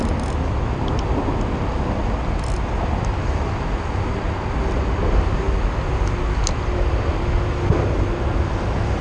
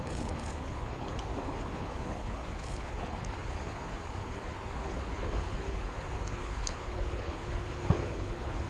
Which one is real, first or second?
first